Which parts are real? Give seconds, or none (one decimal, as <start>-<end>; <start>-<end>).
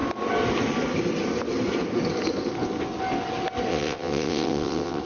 0.0-3.7